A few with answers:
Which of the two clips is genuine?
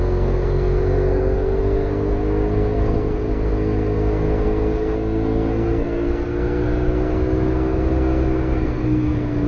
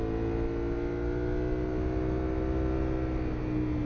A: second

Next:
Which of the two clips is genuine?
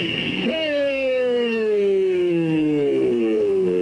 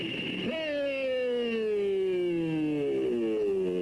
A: second